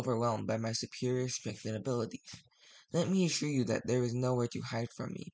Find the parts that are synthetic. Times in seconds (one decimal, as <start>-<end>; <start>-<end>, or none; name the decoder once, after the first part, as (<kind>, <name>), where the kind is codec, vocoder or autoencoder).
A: none